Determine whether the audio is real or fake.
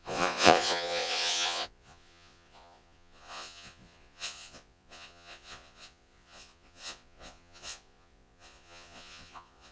fake